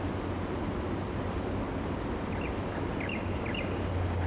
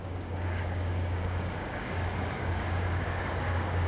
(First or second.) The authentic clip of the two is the first